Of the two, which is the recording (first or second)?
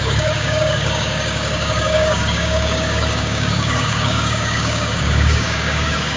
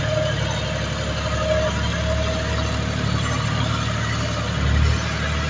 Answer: second